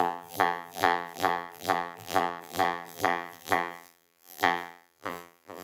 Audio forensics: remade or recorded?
remade